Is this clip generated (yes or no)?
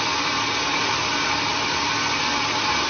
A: no